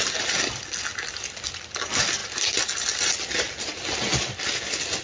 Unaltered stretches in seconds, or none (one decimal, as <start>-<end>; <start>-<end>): 0.0-5.0